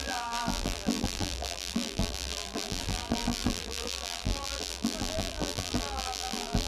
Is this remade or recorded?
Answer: remade